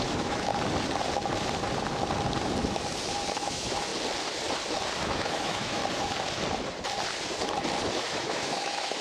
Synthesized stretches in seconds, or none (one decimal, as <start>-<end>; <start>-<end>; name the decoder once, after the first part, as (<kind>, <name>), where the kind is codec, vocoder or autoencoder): 0.0-0.5 (autoencoder, DAC-VAE); 3.3-3.9; 5.0-5.8; 7.9-9.0